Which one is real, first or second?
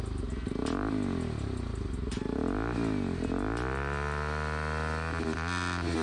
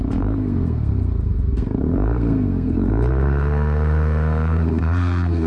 first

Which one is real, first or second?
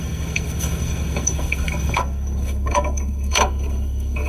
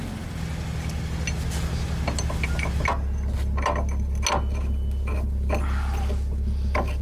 second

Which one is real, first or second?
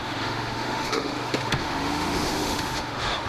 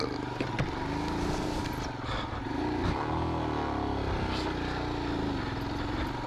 second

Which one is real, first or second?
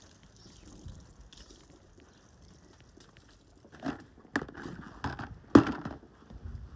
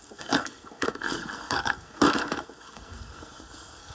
first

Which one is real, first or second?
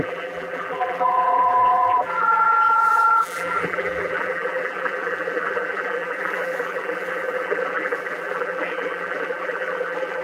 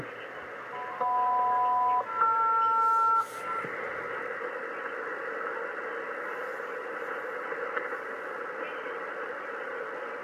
second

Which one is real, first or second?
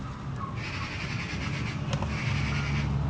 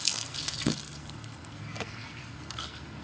first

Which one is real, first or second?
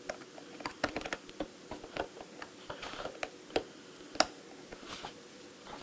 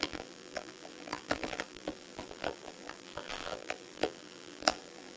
first